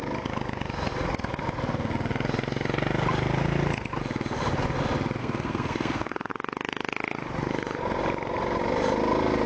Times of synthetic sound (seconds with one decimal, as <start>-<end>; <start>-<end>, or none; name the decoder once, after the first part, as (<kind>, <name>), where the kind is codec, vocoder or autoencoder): 5.2-6.3 (codec, SNAC)